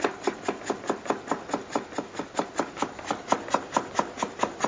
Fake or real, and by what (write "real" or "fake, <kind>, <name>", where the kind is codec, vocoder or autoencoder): real